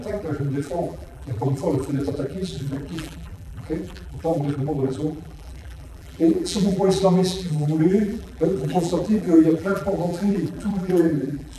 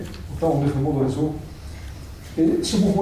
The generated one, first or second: first